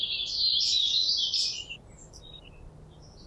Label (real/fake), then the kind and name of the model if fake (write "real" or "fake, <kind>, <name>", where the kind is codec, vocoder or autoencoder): real